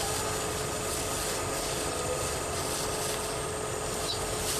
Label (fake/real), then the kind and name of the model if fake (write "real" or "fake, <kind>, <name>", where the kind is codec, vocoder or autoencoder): real